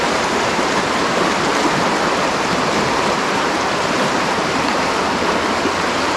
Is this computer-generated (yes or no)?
yes